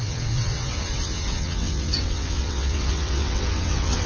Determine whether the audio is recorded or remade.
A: remade